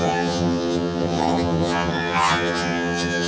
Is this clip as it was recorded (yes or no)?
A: no